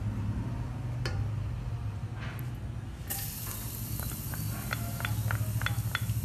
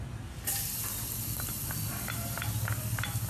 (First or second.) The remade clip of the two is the second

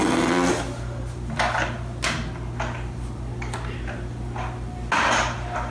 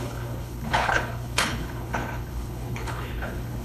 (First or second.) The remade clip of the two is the second